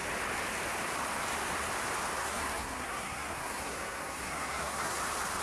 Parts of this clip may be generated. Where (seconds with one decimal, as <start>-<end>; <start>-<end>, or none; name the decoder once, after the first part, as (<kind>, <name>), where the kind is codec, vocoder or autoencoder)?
2.2-5.0 (codec, SNAC)